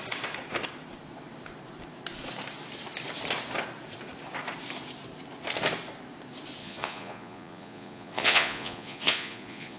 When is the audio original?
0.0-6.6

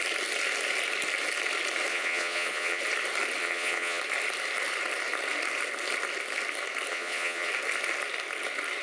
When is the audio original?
0.0-1.9; 2.8-3.4; 4.0-6.9; 7.5-8.8

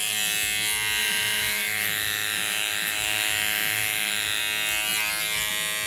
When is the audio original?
0.0-1.0; 4.4-5.9

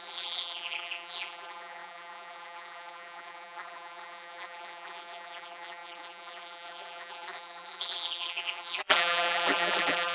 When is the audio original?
none

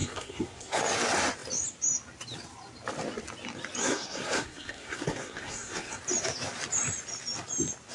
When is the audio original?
0.8-3.8; 6.0-7.9

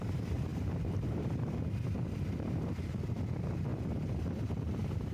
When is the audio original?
3.7-4.5